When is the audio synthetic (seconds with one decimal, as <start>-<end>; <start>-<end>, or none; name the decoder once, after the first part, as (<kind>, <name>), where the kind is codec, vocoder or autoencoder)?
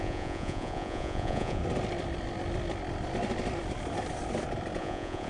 0.0-1.6 (vocoder, Vocos); 4.8-5.3